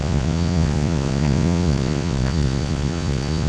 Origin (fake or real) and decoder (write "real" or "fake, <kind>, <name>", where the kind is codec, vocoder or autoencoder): fake, vocoder, Vocos